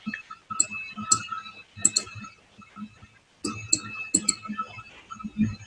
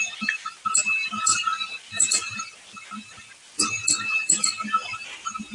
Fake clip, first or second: second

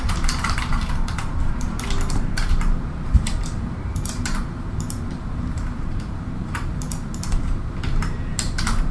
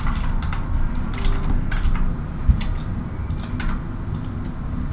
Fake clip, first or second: first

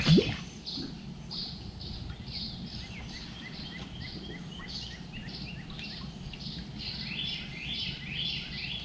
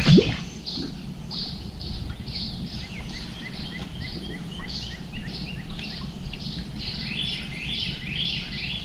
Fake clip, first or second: second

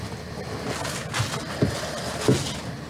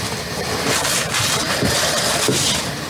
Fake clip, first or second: second